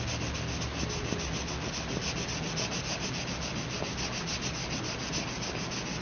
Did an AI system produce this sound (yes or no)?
no